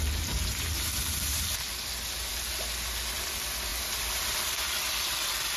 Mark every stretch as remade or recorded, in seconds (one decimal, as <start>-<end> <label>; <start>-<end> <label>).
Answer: 0.0-3.7 recorded; 3.7-4.6 remade; 4.6-5.6 recorded